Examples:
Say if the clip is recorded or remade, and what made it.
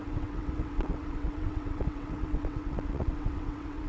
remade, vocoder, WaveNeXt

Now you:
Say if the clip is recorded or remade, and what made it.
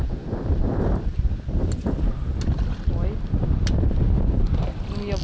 recorded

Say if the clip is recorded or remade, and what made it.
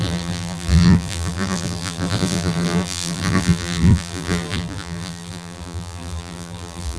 remade, vocoder, BigVGAN v2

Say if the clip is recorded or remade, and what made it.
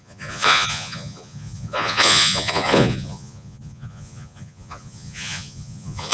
remade, vocoder, Vocos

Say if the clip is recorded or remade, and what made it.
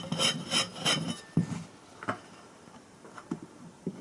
remade, vocoder, BigVGAN v2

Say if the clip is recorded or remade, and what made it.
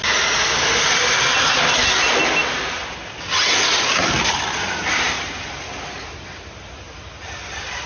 recorded